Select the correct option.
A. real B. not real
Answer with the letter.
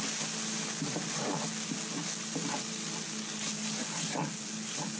A